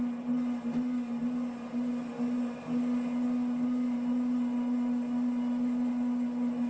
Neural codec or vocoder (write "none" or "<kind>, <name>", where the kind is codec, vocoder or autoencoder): none